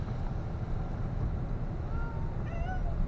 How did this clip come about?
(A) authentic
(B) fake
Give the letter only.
A